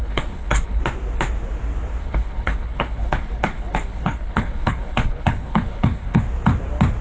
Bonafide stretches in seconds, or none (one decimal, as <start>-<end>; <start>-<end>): 0.8-2.0; 6.2-7.0